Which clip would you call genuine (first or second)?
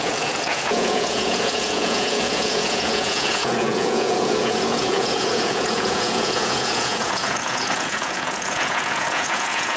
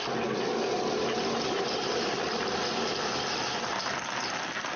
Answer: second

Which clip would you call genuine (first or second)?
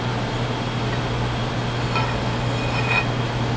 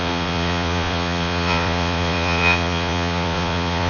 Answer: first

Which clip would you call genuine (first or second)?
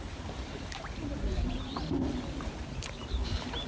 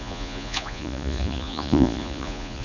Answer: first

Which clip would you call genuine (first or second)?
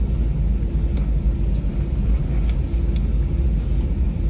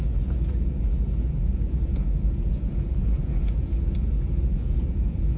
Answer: first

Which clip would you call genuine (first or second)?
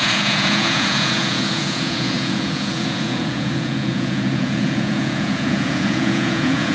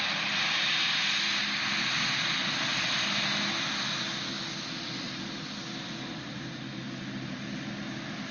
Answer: second